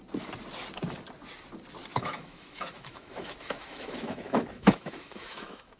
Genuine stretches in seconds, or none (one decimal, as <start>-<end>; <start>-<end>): 0.0-1.9

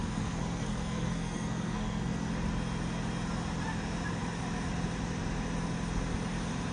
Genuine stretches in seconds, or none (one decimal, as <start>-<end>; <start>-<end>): 2.3-6.7

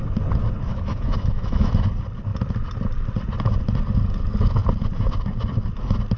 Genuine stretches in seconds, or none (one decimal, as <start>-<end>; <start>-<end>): 0.0-0.7; 1.7-6.2